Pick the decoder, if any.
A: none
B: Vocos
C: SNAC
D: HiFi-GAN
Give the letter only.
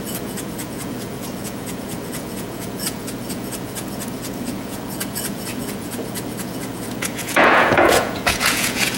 B